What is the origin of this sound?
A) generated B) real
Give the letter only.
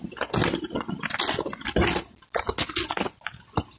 B